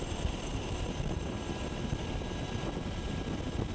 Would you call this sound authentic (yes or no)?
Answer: yes